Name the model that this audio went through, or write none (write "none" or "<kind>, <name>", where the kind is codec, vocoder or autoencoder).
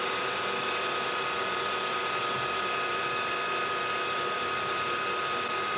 none